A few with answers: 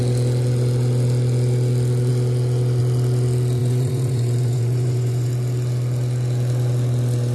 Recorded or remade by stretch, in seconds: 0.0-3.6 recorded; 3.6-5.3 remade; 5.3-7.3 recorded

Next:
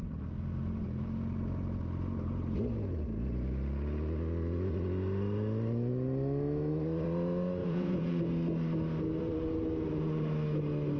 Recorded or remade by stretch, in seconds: 0.0-7.6 recorded; 7.6-8.2 remade; 8.2-11.0 recorded

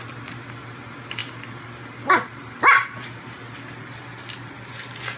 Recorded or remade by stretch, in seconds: 0.0-5.2 recorded

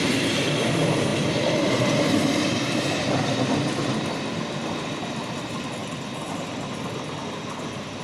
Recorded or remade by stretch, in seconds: 0.0-8.0 recorded

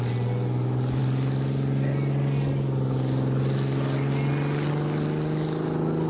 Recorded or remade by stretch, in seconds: 0.0-6.1 recorded

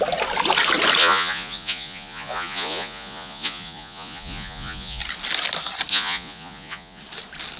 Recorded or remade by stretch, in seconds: 0.0-1.0 recorded; 1.0-5.0 remade; 5.0-5.9 recorded; 5.9-7.0 remade; 7.0-7.6 recorded

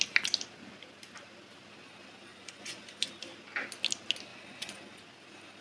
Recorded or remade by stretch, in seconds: 0.0-2.3 recorded; 2.3-3.1 remade; 3.1-4.3 recorded; 4.3-5.0 remade; 5.0-5.6 recorded

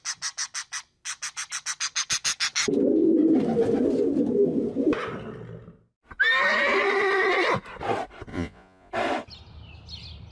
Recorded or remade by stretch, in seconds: 0.0-8.3 recorded; 8.3-8.9 remade; 8.9-10.3 recorded